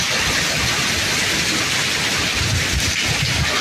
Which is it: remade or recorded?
recorded